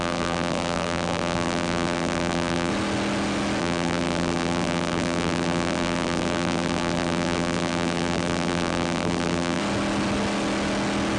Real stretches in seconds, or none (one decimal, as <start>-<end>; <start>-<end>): 2.7-3.6; 9.6-11.2